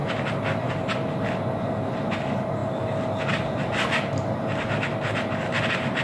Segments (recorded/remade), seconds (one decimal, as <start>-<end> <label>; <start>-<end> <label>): 0.0-6.0 recorded